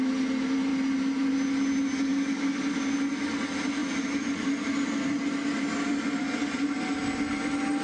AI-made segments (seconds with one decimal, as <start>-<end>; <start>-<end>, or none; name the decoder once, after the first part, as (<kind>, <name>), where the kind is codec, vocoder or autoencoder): none

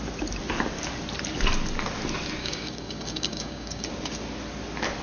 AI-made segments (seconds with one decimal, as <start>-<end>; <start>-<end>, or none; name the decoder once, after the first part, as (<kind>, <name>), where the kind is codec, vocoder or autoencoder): 2.4-3.9 (codec, DAC)

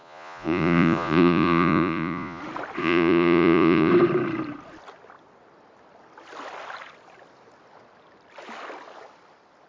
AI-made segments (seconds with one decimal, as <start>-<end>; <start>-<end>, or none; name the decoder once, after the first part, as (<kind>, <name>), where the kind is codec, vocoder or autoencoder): 0.0-2.4 (vocoder, Vocos); 2.8-3.9

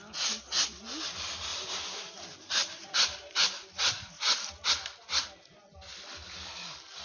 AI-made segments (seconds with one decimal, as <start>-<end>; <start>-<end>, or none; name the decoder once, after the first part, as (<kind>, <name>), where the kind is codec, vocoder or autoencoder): 1.5-4.5 (vocoder, BigVGAN v2)

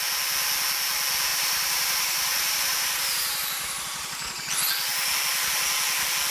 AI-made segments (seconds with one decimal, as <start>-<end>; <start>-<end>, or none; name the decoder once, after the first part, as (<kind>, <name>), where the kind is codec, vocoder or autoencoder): 1.3-4.5 (vocoder, BigVGAN v2)

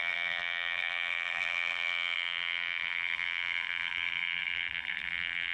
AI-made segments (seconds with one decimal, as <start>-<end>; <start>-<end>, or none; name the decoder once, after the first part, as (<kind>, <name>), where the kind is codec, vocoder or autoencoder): 0.0-5.5 (vocoder, BigVGAN v2)

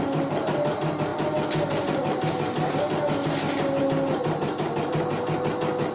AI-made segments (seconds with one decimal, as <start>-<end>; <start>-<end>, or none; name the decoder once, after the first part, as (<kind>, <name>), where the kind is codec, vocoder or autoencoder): none

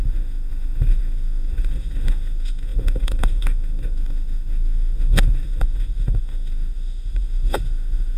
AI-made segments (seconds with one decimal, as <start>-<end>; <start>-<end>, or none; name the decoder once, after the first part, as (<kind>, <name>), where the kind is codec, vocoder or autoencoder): 0.0-8.2 (autoencoder, DAC-VAE)